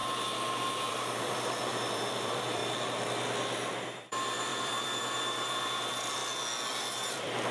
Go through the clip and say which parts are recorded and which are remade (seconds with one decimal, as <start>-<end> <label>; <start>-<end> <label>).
0.0-2.6 remade; 2.6-3.7 recorded; 3.7-6.2 remade; 6.2-7.1 recorded; 7.1-7.5 remade